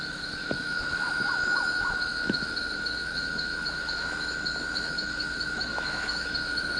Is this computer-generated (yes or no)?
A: yes